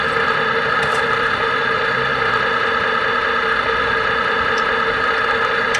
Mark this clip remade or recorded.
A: remade